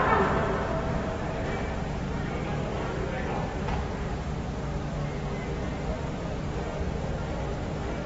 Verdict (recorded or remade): recorded